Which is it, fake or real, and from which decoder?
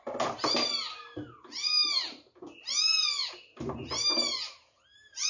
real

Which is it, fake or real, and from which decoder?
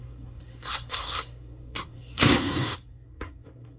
fake, codec, SNAC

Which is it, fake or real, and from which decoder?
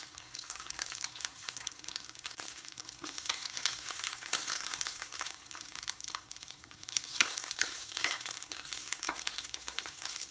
fake, codec, SNAC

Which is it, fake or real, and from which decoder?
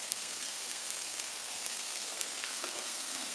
fake, codec, SNAC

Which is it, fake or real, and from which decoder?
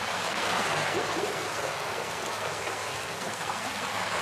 fake, codec, SNAC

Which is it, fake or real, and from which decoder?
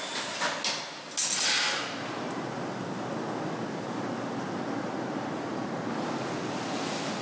real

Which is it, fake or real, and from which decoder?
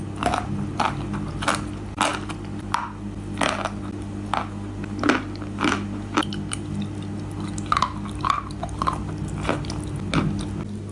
real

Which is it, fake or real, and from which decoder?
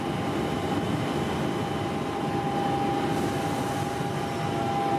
real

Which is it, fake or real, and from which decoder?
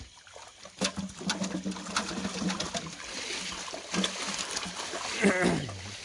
real